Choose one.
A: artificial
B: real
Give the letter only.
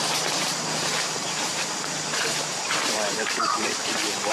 B